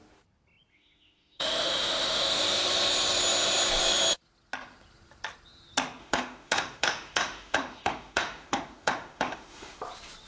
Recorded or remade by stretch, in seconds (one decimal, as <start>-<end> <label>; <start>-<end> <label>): 0.0-0.7 recorded; 0.7-2.4 remade; 2.4-6.0 recorded; 6.0-9.8 remade; 9.8-10.3 recorded